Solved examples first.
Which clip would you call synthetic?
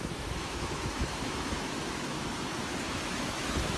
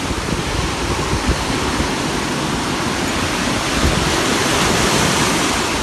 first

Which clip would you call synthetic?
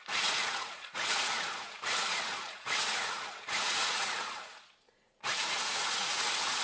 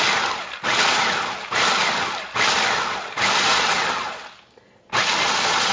first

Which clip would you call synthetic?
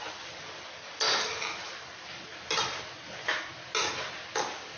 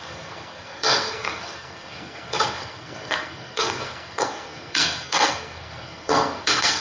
second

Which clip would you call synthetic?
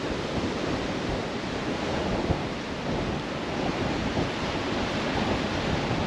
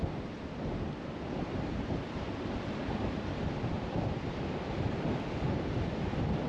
second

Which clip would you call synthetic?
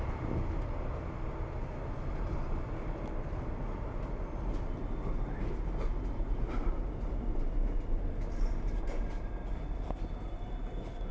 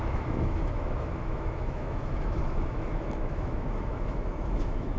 second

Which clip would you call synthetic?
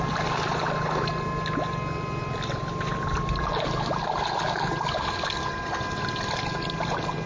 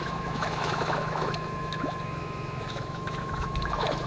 second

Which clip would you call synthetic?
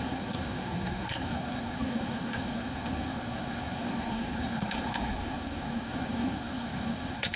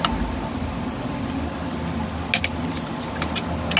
first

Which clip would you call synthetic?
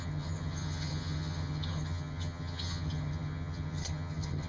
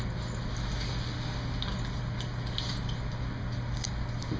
first